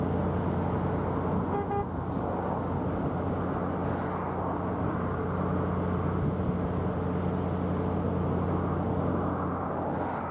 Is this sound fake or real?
real